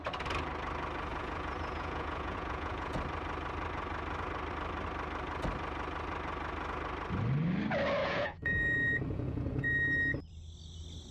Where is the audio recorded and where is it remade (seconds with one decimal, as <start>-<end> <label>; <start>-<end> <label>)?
0.0-1.1 recorded; 1.1-3.0 remade; 3.0-8.0 recorded; 8.0-9.7 remade; 9.7-11.1 recorded